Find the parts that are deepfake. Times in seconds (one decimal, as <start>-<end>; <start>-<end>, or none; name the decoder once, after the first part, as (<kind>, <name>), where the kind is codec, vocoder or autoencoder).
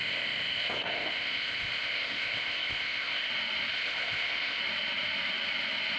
0.0-3.3 (codec, ZipCodec); 3.7-4.6